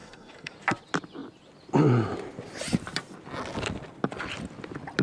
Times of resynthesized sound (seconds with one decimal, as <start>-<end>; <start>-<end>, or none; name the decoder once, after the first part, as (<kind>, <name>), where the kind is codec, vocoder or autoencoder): 0.0-0.5 (codec, SNAC)